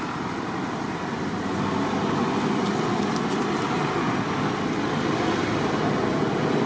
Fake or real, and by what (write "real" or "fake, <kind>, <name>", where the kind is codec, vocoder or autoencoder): real